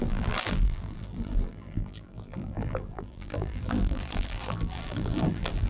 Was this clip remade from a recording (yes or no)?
yes